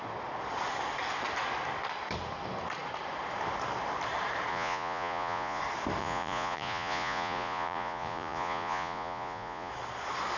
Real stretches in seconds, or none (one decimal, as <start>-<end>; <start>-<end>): 0.0-4.5; 5.6-6.0; 9.7-10.4